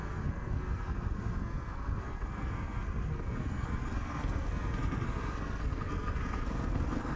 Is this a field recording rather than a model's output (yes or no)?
no